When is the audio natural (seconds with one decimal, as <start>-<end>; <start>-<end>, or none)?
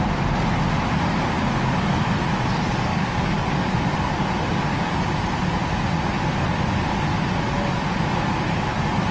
0.0-2.9; 3.7-9.1